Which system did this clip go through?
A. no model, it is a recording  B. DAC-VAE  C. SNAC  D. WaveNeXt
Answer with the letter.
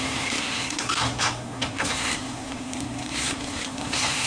C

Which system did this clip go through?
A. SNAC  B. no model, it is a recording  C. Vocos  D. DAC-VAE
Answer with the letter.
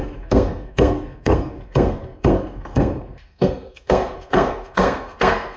A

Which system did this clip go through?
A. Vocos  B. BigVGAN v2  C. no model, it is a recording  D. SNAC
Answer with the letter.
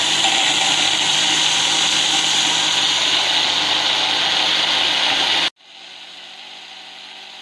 C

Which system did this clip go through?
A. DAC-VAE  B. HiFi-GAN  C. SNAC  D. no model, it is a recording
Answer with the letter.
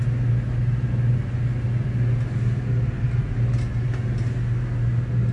D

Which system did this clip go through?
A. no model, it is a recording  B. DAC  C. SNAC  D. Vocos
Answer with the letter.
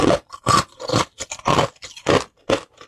A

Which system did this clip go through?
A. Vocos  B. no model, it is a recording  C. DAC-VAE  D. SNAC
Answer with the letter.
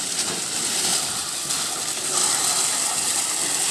B